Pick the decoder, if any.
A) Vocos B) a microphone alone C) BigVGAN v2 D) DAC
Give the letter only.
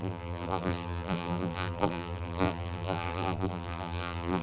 C